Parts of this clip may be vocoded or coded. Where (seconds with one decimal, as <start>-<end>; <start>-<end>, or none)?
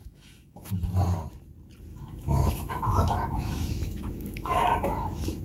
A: 0.0-0.8; 1.9-5.4